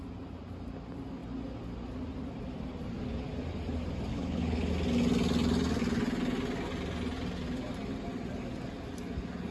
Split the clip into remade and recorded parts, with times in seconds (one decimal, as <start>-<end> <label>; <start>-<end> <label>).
0.0-4.1 recorded; 4.1-4.7 remade; 4.7-9.5 recorded

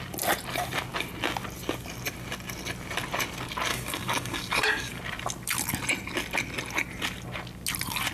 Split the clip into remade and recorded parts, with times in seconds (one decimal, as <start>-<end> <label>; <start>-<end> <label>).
0.0-3.7 recorded; 3.7-5.0 remade; 5.0-8.1 recorded

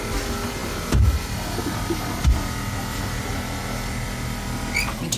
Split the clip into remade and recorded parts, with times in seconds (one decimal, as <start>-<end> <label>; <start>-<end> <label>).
0.0-5.2 recorded

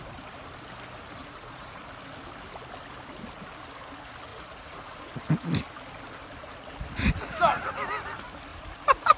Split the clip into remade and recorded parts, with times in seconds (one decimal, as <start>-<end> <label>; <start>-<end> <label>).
0.0-1.2 recorded; 1.2-1.8 remade; 1.8-4.3 recorded; 4.3-5.1 remade; 5.1-9.2 recorded

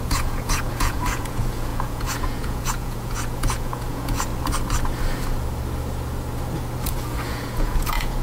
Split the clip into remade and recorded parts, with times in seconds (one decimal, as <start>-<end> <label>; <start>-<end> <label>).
0.0-4.3 remade; 4.3-6.9 recorded; 6.9-8.2 remade

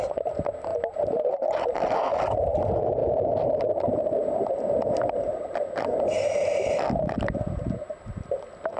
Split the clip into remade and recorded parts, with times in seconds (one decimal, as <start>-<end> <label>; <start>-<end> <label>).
0.0-8.8 recorded

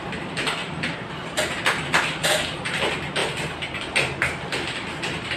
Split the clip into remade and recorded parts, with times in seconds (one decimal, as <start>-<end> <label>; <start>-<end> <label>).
0.0-0.6 recorded; 0.6-1.6 remade; 1.6-2.2 recorded; 2.2-2.8 remade; 2.8-5.4 recorded

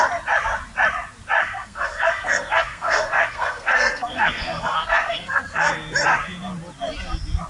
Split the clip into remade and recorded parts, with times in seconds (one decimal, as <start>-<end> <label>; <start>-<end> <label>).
0.0-1.4 recorded; 1.4-5.7 remade; 5.7-7.5 recorded